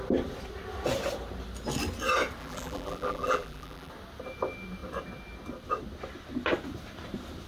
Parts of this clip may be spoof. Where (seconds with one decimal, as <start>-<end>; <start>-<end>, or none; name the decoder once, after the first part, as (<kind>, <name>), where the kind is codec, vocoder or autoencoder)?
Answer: 2.4-3.9 (vocoder, BigVGAN v2)